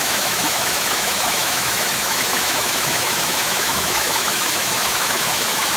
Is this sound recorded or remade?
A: remade